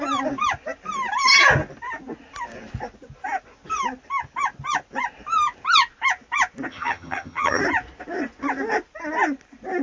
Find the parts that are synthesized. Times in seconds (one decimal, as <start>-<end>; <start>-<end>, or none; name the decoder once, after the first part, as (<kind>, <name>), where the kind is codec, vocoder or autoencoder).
6.7-7.6 (vocoder, HiFi-GAN)